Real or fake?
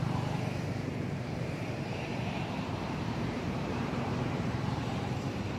fake